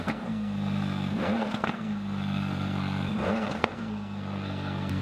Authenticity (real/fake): fake